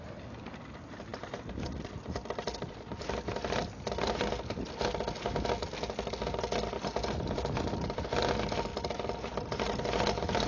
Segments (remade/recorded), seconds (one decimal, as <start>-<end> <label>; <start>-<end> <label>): 0.0-10.5 recorded